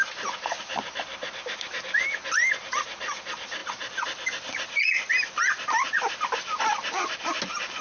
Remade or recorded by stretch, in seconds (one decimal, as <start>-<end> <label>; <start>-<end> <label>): 0.0-7.8 recorded